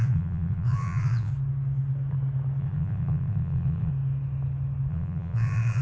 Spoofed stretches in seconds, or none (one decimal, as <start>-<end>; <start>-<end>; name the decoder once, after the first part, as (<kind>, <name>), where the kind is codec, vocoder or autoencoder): 0.0-1.3 (vocoder, Vocos); 2.6-3.9; 4.9-5.8